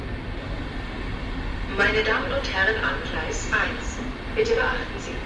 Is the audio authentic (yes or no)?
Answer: yes